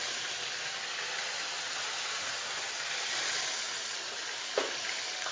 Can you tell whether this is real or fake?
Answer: real